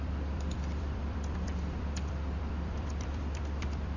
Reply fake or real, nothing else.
fake